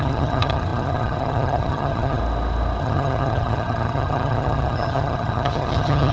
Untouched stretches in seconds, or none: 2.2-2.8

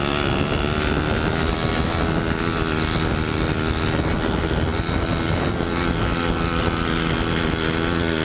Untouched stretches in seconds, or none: 0.0-8.2

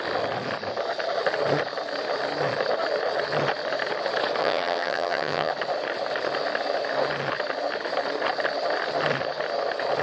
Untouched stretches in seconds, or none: 0.0-4.4; 5.5-10.0

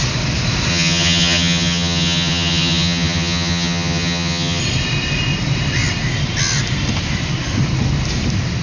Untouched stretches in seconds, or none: 0.0-0.7; 4.6-8.6

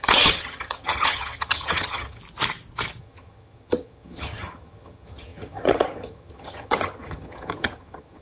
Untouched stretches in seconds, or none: 2.2-3.0

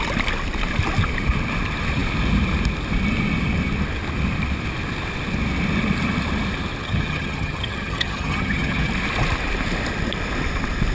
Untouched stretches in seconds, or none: 0.0-6.8; 8.9-10.9

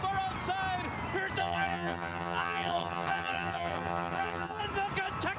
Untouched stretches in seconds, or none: 0.0-1.4; 4.6-5.4

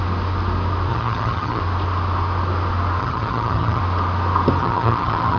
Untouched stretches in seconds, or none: 0.0-0.9; 1.6-3.0; 3.8-4.6